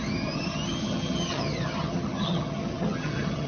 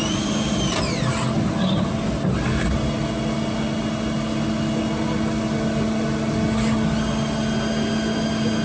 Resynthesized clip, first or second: first